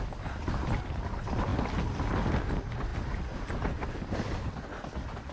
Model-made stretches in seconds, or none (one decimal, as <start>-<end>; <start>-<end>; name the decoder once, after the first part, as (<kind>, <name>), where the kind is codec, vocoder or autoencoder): 2.9-4.5 (vocoder, BigVGAN v2)